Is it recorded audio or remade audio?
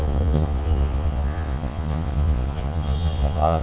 remade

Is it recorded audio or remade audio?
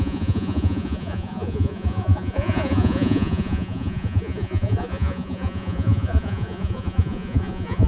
remade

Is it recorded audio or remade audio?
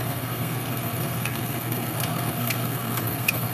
remade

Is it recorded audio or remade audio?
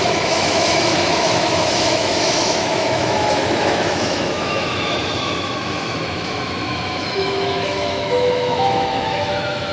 remade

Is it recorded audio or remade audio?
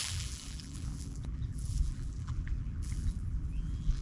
remade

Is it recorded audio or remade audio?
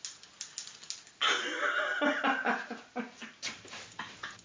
recorded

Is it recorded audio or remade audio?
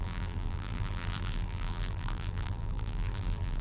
remade